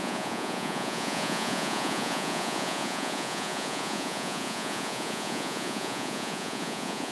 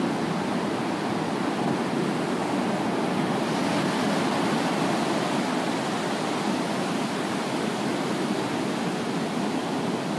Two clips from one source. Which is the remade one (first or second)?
first